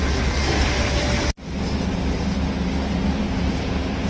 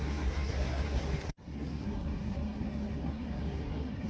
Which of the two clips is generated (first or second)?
second